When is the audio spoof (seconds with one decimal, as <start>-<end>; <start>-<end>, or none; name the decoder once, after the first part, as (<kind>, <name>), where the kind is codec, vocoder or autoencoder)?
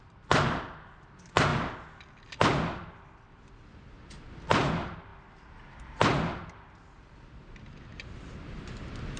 none